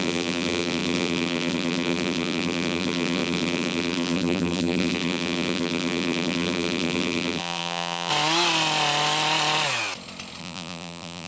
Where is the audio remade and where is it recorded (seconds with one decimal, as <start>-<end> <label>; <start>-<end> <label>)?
0.0-8.1 remade; 8.1-10.4 recorded; 10.4-11.3 remade

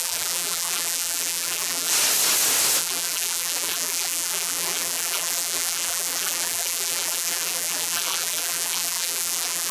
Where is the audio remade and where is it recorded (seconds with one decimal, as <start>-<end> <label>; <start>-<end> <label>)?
0.0-1.9 remade; 1.9-2.8 recorded; 2.8-9.7 remade

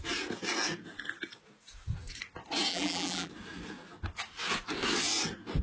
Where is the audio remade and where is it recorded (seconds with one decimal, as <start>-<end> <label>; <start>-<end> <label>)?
0.0-2.7 recorded; 2.7-3.3 remade; 3.3-5.6 recorded

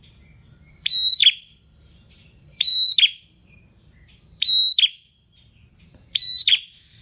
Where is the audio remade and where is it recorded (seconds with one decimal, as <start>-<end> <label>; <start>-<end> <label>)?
0.0-1.2 remade; 1.2-2.2 recorded; 2.2-2.7 remade; 2.7-3.2 recorded; 3.2-4.6 remade; 4.6-5.8 recorded; 5.8-7.0 remade

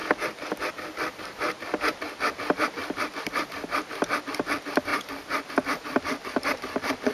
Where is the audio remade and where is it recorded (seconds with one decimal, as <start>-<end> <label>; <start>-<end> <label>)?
0.0-0.7 remade; 0.7-2.8 recorded; 2.8-3.6 remade; 3.6-6.2 recorded; 6.2-7.1 remade

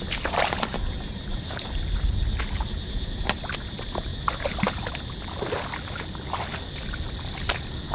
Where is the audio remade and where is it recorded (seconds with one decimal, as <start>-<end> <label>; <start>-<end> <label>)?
0.0-1.3 recorded; 1.3-2.1 remade; 2.1-7.9 recorded

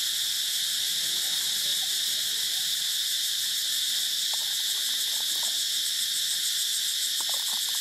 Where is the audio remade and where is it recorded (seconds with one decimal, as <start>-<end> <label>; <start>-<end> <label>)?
0.0-1.7 recorded; 1.7-5.8 remade; 5.8-7.8 recorded